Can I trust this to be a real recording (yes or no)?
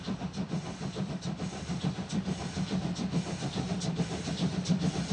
yes